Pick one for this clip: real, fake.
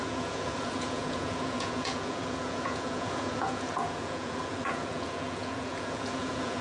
fake